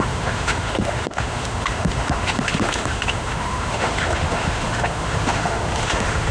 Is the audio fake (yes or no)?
yes